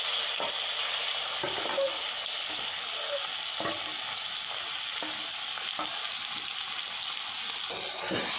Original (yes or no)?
yes